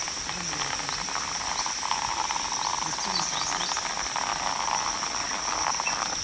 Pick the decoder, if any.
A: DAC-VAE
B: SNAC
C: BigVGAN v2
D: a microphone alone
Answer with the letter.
D